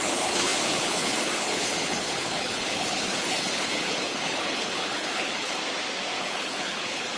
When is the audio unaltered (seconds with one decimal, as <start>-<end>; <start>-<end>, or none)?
5.6-6.2